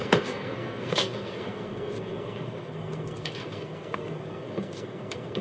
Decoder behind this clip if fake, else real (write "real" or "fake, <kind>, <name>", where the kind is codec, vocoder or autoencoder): fake, codec, SNAC